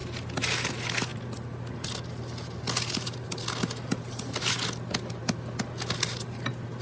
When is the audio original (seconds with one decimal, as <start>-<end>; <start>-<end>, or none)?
0.0-6.8